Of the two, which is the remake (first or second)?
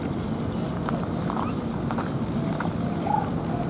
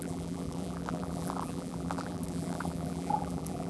second